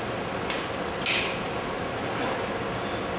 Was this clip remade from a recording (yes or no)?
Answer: no